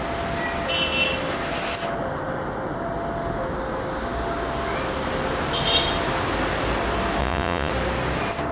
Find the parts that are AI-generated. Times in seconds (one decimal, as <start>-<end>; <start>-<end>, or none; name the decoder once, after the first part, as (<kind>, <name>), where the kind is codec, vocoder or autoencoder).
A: 7.2-7.7 (vocoder, Vocos)